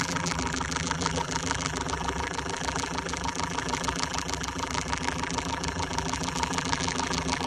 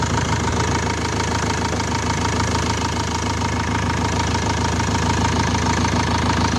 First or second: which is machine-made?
first